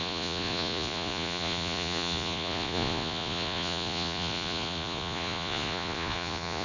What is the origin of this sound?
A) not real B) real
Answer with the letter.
A